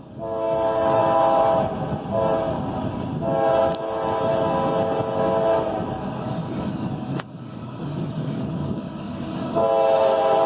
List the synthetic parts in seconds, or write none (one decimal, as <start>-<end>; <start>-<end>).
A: 0.0-1.0; 5.9-9.6